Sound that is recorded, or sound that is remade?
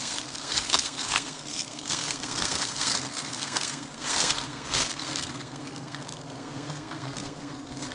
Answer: remade